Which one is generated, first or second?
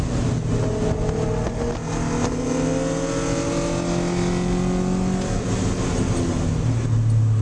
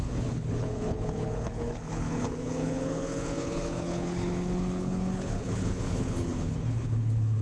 second